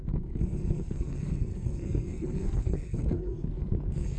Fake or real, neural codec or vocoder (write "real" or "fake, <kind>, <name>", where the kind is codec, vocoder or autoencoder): fake, codec, SNAC